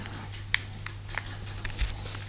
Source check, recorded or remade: recorded